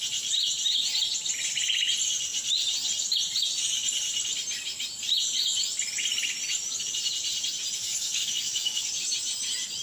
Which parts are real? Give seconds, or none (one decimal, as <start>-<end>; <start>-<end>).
0.0-7.8; 8.9-9.8